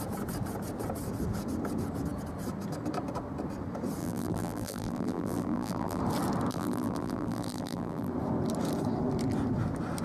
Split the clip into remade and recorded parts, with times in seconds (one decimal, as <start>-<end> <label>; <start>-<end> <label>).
0.0-4.0 recorded; 4.0-6.0 remade; 6.0-6.5 recorded; 6.5-8.1 remade; 8.1-10.0 recorded